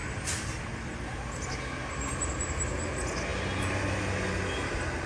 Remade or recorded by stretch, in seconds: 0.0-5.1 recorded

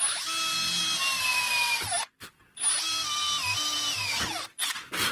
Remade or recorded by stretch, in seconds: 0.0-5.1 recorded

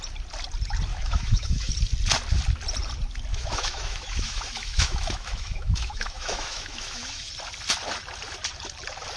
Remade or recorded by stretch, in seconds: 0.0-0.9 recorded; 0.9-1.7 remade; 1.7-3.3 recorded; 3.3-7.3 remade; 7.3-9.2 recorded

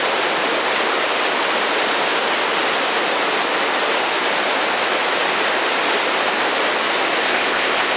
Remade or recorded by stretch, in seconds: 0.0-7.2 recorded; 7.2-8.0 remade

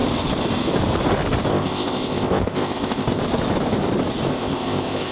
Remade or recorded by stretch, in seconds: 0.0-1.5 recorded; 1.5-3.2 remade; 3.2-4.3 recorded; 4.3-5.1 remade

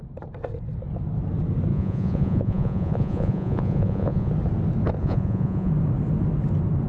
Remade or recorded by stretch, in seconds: 0.0-1.7 recorded; 1.7-4.3 remade; 4.3-5.0 recorded; 5.0-5.7 remade; 5.7-6.9 recorded

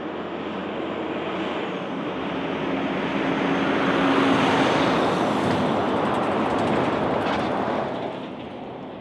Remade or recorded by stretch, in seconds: 0.0-9.0 recorded

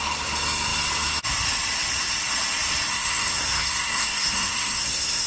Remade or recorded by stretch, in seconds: 0.0-2.9 recorded; 2.9-5.3 remade